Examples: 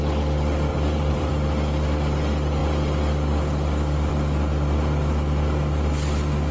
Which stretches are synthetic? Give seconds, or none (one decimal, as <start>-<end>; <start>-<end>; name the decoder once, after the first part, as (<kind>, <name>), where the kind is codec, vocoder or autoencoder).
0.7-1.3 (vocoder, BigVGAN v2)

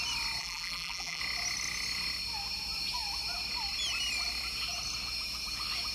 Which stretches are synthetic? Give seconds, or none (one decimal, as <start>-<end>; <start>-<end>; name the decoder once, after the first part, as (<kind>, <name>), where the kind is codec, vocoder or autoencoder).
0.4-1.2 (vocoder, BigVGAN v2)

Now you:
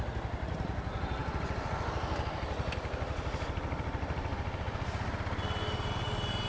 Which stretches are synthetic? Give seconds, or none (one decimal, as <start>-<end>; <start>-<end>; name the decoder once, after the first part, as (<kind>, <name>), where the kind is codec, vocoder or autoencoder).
none

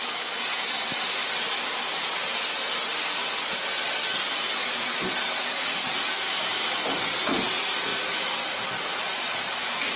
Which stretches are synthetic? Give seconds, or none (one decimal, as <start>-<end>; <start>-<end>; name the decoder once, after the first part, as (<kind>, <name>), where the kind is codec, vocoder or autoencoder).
none

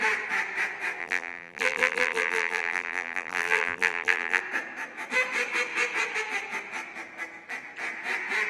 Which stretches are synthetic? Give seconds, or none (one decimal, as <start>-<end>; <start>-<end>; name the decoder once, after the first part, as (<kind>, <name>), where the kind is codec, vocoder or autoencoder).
1.0-4.4 (vocoder, BigVGAN v2)

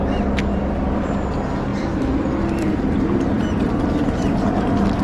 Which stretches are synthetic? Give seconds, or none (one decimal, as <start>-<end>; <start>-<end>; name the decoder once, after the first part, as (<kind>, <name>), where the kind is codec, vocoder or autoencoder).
none